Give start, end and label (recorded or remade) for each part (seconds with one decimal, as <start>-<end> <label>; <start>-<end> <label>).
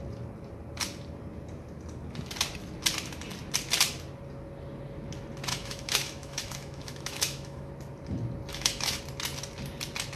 0.0-5.5 recorded; 5.5-7.7 remade; 7.7-8.5 recorded; 8.5-9.0 remade; 9.0-10.2 recorded